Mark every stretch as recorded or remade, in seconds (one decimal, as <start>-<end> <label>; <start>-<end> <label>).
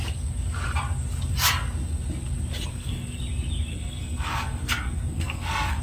0.0-2.7 recorded; 2.7-3.2 remade; 3.2-3.7 recorded; 3.7-5.8 remade